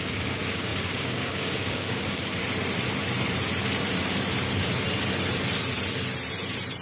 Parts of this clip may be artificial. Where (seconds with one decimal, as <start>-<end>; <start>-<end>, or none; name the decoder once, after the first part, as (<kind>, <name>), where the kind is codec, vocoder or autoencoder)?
0.0-2.4 (codec, DAC)